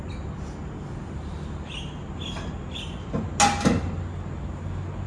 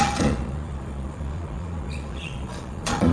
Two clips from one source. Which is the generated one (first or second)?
second